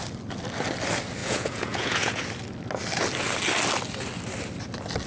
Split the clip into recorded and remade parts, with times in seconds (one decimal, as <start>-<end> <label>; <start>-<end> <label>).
0.0-1.2 recorded; 1.2-2.2 remade; 2.2-5.1 recorded